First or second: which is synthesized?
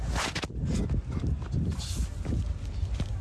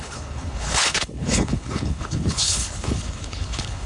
second